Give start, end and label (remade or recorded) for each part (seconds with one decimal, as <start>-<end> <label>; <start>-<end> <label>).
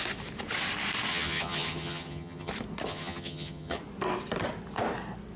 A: 0.0-1.1 recorded; 1.1-2.5 remade; 2.5-2.9 recorded; 2.9-3.8 remade; 3.8-5.4 recorded